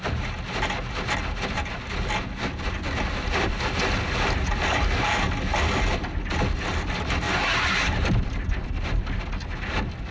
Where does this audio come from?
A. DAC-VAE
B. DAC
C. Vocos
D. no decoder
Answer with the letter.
D